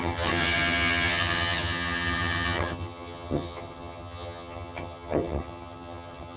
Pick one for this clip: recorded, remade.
remade